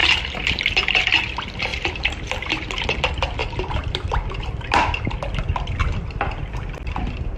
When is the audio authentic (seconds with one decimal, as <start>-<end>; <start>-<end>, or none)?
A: 0.6-1.7; 3.0-3.4; 4.3-5.8